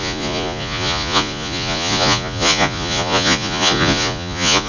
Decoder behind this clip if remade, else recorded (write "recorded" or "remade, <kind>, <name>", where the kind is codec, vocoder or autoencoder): remade, vocoder, Vocos